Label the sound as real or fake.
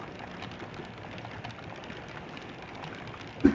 real